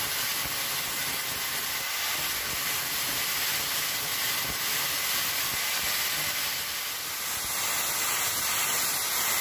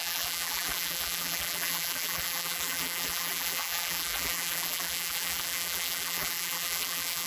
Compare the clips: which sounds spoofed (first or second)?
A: second